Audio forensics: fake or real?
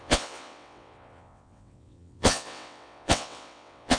fake